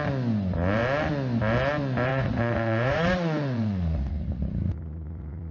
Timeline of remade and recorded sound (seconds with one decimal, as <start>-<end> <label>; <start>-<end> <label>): 0.0-2.1 recorded; 2.1-5.5 remade